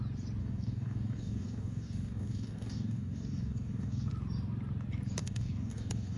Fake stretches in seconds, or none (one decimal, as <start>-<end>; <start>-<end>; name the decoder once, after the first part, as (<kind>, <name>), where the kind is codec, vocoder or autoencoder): 0.4-4.1 (codec, DAC); 5.2-6.2